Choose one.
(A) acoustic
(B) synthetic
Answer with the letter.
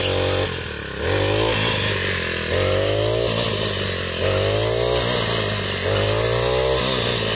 A